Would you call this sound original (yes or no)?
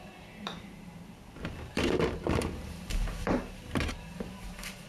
no